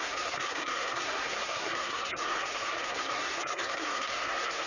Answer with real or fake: fake